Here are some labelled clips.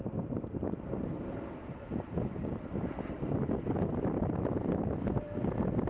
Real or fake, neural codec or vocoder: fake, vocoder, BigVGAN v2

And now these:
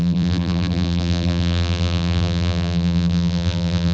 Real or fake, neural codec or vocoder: fake, vocoder, BigVGAN v2